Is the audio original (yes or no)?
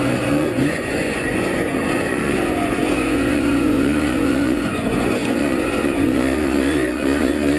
no